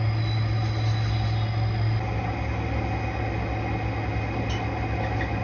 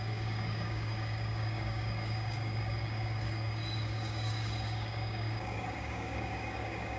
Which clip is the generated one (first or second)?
second